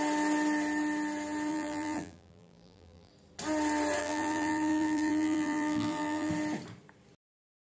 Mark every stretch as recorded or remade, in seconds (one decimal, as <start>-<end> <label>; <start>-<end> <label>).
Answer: 0.0-1.5 recorded; 1.5-3.1 remade; 3.1-4.0 recorded; 4.0-6.3 remade; 6.3-7.6 recorded